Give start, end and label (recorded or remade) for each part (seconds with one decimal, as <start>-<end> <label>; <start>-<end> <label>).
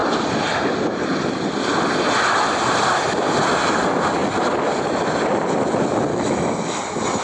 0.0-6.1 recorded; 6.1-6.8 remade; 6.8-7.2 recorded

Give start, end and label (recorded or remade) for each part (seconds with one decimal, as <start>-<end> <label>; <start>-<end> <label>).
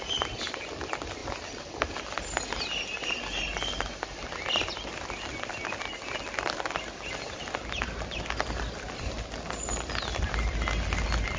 0.0-11.4 recorded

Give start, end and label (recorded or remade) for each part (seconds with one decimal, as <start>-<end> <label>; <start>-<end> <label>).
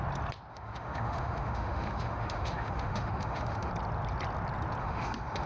0.0-0.5 recorded; 0.5-3.7 remade; 3.7-4.8 recorded; 4.8-5.5 remade